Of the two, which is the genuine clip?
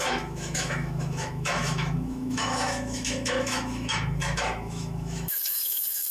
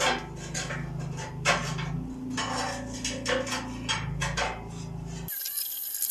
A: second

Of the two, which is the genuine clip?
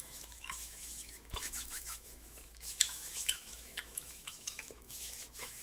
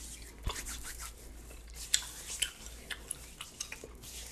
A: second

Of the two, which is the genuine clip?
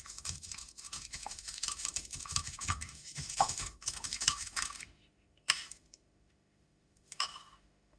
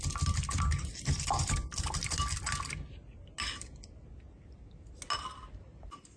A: second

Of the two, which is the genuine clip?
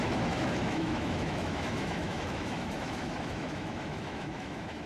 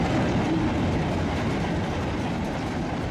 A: second